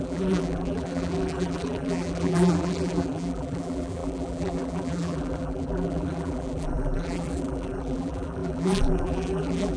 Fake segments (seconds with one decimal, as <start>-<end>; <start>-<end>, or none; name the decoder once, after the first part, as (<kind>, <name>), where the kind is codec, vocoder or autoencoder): 0.0-9.8 (vocoder, BigVGAN v2)